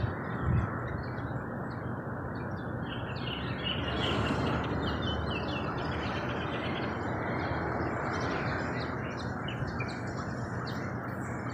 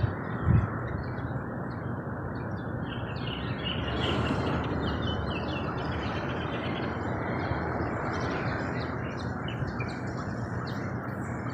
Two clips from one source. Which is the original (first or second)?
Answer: first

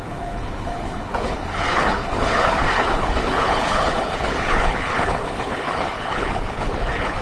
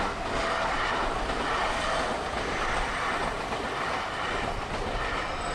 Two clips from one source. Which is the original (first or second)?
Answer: second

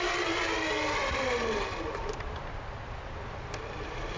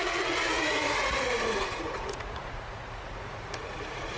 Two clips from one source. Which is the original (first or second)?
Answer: first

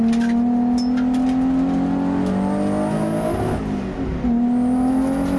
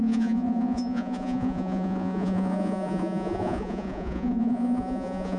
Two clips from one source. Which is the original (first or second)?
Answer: first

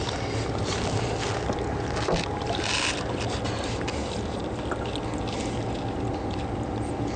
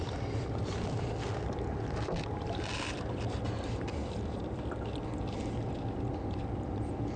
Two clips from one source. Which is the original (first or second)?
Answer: first